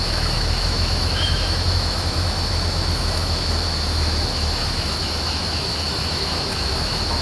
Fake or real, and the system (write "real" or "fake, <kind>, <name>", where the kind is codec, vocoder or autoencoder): fake, autoencoder, DAC-VAE